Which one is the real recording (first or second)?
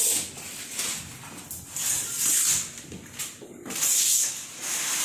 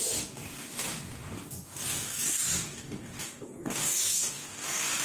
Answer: first